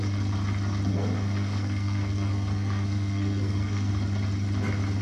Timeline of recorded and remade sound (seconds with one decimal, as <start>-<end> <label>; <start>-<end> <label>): 0.0-0.9 recorded; 0.9-3.9 remade; 3.9-5.0 recorded